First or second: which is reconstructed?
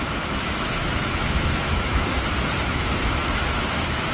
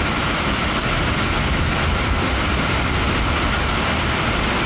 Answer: first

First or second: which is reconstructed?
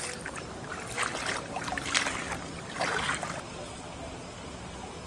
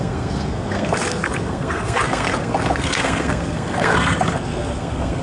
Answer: second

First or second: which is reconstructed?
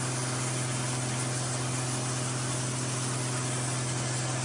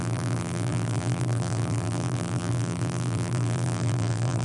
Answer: second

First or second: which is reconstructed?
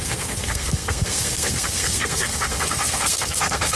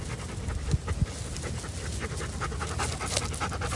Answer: first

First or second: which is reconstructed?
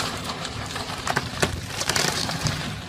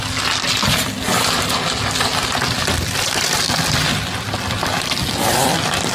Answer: first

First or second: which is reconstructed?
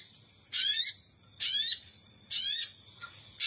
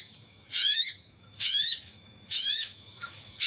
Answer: second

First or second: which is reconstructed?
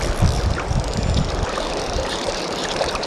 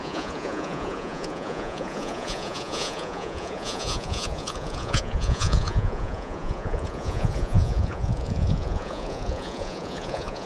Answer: second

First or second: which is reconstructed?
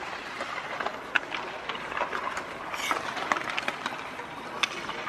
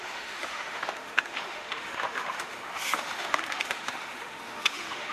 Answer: second